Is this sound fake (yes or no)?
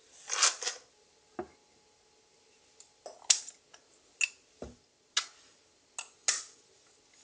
no